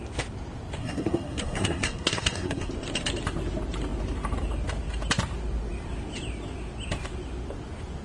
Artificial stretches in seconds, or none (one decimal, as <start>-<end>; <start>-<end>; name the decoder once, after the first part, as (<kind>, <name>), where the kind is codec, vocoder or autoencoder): 0.8-2.7 (codec, SNAC)